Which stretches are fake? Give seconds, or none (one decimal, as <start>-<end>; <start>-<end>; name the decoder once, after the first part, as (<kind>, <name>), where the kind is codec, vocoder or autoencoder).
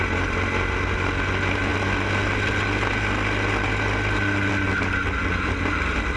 none